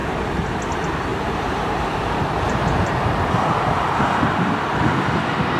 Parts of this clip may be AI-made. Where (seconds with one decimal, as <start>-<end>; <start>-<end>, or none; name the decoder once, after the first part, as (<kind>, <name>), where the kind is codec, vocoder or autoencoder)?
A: 0.0-0.6 (vocoder, BigVGAN v2); 1.1-4.5